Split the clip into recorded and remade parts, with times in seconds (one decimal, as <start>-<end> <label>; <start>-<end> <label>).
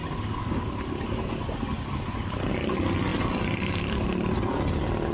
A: 0.0-5.1 recorded